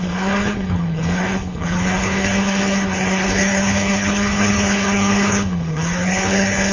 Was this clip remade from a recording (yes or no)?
yes